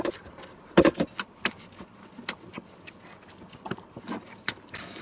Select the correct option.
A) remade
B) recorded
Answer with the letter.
B